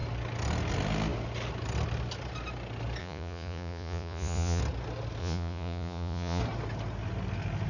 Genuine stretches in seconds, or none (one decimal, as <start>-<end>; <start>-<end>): 0.0-3.0; 4.6-5.2; 6.4-7.7

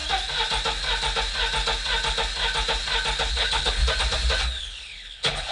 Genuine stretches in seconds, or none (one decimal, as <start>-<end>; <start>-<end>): 0.0-3.3; 3.8-4.6

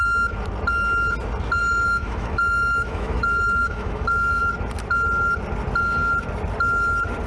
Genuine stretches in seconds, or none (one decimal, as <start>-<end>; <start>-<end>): 0.0-1.6; 4.4-7.3

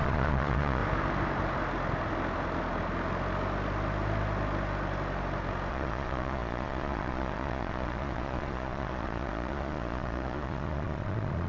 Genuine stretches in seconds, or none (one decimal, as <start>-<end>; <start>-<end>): 0.8-5.7

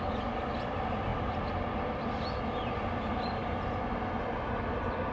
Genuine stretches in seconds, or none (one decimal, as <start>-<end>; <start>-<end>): 0.0-5.1